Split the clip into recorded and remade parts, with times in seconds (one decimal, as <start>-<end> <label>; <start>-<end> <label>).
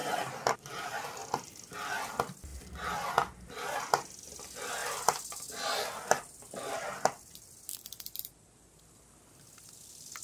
0.0-0.6 remade; 0.6-1.2 recorded; 1.2-2.0 remade; 2.0-2.5 recorded; 2.5-3.1 remade; 3.1-4.8 recorded; 4.8-9.6 remade; 9.6-10.2 recorded